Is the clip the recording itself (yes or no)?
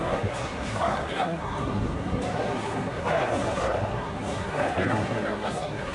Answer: no